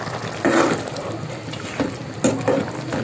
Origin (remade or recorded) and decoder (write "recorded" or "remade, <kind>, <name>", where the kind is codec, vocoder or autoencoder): recorded